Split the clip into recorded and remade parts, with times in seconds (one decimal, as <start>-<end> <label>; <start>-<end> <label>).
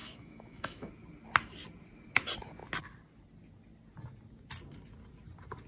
0.0-0.9 remade; 0.9-5.7 recorded